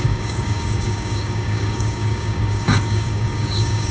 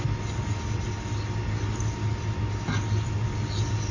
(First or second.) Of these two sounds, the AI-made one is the first